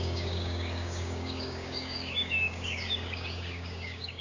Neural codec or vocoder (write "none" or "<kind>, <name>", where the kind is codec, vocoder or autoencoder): codec, DAC